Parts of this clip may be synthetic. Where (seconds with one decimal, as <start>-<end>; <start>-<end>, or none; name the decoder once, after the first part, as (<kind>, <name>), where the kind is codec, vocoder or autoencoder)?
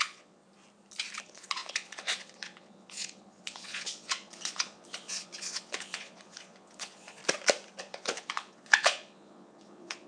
0.0-0.4 (vocoder, Vocos); 1.2-7.2; 7.8-10.1